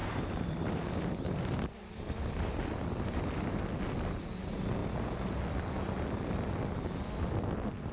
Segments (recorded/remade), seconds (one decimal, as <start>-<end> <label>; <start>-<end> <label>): 0.0-3.6 remade; 3.6-4.8 recorded; 4.8-5.4 remade; 5.4-7.9 recorded